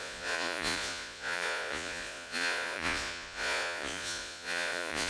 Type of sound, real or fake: fake